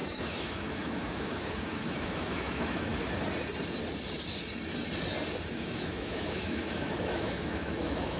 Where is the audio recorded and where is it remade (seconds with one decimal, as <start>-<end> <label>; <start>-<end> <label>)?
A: 0.0-2.9 remade; 2.9-5.5 recorded; 5.5-8.2 remade